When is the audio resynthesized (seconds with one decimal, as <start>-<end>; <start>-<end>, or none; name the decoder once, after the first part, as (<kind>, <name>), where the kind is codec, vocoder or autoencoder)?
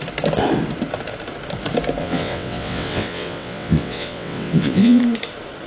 2.0-5.0 (vocoder, WaveNeXt)